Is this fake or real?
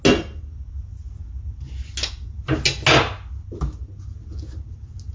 real